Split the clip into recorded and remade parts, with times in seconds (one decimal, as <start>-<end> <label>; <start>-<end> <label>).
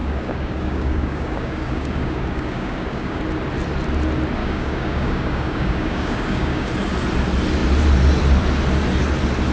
0.0-3.2 remade; 3.2-4.4 recorded; 4.4-6.7 remade; 6.7-9.5 recorded